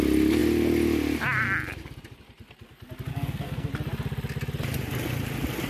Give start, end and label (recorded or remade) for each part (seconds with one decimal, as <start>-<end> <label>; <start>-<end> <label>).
0.0-3.1 recorded; 3.1-3.7 remade; 3.7-5.7 recorded